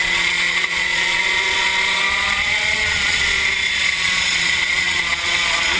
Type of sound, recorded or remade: remade